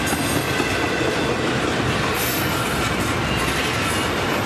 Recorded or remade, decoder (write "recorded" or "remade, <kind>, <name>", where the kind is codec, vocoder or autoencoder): recorded